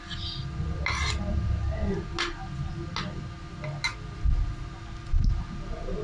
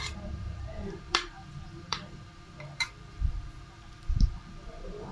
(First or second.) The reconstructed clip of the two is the second